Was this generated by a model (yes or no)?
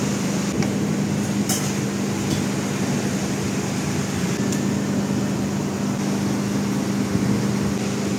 no